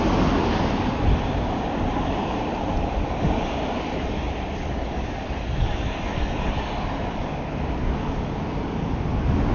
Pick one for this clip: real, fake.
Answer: real